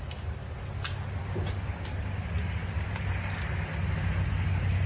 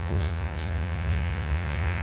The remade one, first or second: second